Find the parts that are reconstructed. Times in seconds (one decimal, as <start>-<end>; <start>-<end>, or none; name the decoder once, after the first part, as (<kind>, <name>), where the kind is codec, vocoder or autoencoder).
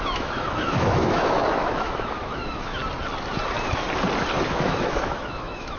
0.0-2.8 (autoencoder, DAC-VAE); 4.5-5.8